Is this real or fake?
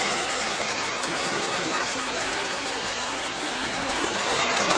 fake